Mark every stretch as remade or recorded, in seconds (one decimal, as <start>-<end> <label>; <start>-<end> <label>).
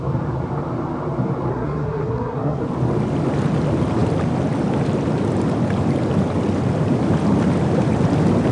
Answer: 0.0-1.5 recorded; 1.5-2.6 remade; 2.6-8.5 recorded